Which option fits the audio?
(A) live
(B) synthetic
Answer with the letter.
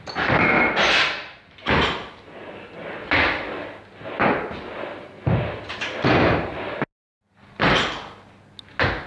A